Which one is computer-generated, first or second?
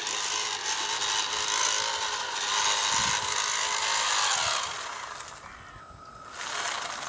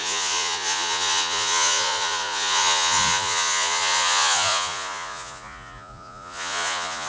second